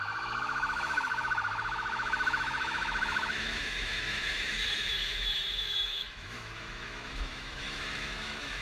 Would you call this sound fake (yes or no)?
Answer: yes